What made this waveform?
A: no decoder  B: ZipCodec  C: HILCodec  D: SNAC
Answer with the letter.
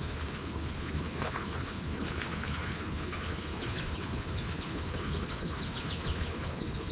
C